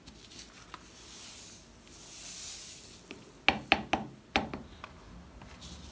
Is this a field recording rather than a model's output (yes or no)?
yes